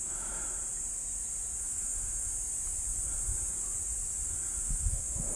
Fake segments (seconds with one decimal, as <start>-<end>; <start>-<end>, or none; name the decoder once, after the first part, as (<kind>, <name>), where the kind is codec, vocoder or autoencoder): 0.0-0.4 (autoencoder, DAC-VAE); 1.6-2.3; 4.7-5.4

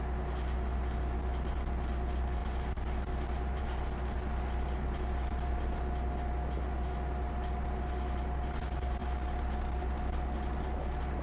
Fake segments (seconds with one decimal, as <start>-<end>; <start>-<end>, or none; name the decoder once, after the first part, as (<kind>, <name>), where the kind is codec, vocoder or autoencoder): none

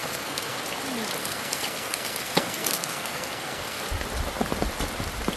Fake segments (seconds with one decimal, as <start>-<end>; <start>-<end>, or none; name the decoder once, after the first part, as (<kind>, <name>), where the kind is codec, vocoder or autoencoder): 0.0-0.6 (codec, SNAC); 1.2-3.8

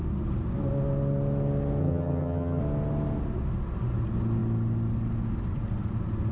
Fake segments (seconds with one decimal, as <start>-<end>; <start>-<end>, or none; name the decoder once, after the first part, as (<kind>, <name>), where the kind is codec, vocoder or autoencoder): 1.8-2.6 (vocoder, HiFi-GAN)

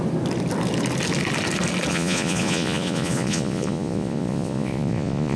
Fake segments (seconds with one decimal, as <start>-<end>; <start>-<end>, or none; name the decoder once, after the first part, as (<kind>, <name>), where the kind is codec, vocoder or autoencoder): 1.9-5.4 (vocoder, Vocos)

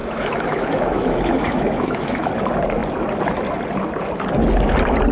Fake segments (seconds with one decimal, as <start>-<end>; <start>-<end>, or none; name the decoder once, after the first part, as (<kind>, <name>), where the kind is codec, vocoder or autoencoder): 0.0-2.3 (autoencoder, DAC-VAE)

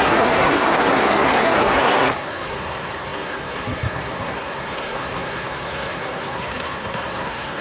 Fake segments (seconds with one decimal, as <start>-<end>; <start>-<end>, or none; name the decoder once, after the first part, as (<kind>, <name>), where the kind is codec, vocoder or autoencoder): 0.0-7.6 (codec, SNAC)

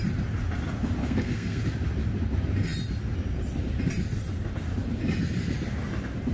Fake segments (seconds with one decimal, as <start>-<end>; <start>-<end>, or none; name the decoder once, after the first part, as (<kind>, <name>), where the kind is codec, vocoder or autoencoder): 1.0-1.6 (codec, SNAC)